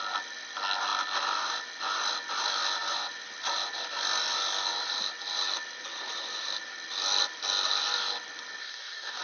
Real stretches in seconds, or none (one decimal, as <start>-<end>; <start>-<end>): 0.0-8.6